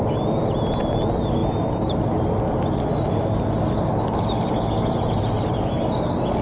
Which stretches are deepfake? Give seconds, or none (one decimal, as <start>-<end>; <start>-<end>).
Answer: none